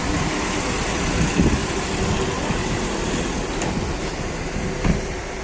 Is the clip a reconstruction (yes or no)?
no